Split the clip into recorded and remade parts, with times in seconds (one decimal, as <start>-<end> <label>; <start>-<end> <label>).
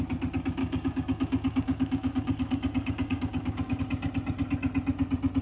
0.0-0.6 recorded; 0.6-3.8 remade; 3.8-5.4 recorded